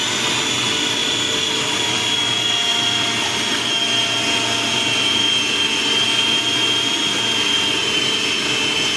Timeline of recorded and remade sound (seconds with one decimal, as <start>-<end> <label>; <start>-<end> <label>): 0.0-1.0 recorded; 1.0-2.2 remade; 2.2-2.7 recorded; 2.7-3.6 remade; 3.6-9.0 recorded

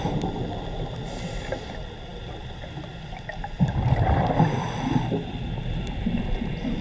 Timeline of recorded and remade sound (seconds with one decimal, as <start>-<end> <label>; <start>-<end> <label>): 0.0-2.1 recorded; 2.1-5.3 remade; 5.3-6.8 recorded